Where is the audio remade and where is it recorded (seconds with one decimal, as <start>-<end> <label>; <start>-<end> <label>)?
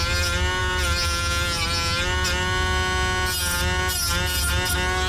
0.0-5.1 recorded